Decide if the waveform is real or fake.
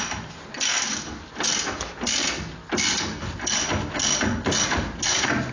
real